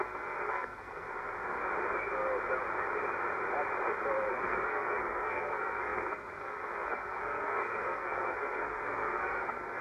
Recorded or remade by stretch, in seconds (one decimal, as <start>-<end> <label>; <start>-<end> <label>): 0.0-1.6 remade; 1.6-4.3 recorded; 4.3-9.8 remade